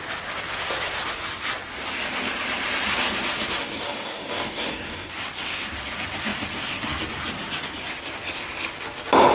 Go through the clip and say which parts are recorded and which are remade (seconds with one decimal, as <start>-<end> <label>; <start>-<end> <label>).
0.0-3.6 recorded; 3.6-5.1 remade; 5.1-9.3 recorded